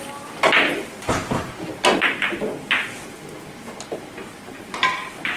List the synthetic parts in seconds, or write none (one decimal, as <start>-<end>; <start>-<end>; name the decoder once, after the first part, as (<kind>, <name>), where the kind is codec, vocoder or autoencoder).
none